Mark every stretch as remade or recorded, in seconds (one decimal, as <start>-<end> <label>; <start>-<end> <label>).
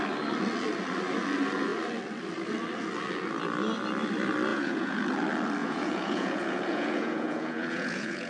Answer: 0.0-4.5 recorded; 4.5-5.0 remade; 5.0-5.6 recorded; 5.6-8.3 remade